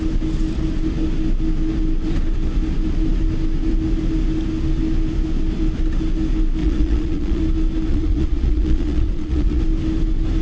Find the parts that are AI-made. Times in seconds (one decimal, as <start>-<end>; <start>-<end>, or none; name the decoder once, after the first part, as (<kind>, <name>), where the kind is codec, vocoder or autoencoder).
6.6-7.4 (vocoder, Vocos); 7.9-9.6